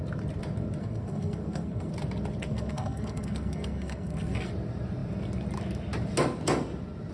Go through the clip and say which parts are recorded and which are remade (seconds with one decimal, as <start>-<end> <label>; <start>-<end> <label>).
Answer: 0.0-0.8 recorded; 0.8-1.9 remade; 1.9-2.5 recorded; 2.5-4.5 remade; 4.5-7.1 recorded